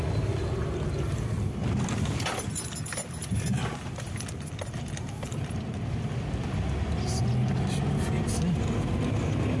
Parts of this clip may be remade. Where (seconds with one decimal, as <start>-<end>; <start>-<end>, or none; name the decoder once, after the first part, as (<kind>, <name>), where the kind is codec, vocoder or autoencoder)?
none